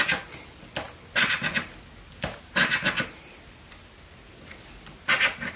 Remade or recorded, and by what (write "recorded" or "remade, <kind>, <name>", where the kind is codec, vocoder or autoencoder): recorded